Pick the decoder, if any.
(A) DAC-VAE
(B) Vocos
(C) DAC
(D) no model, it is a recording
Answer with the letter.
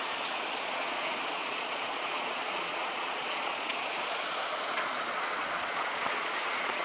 B